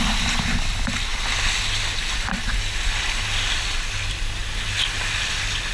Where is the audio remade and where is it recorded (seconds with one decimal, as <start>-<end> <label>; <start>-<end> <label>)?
0.0-5.7 recorded